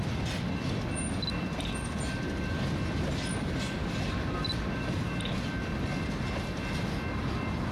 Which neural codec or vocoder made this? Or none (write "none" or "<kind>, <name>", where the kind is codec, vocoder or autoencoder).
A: none